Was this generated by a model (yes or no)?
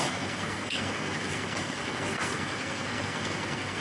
yes